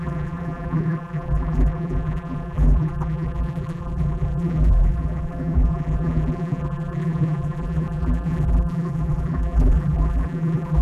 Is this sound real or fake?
fake